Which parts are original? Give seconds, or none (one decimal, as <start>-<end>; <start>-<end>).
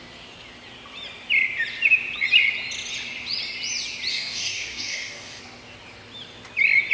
0.0-4.1; 5.4-6.9